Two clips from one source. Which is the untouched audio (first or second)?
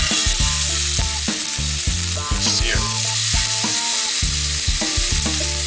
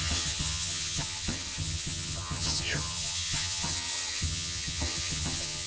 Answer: first